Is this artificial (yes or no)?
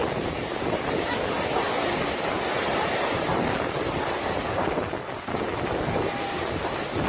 no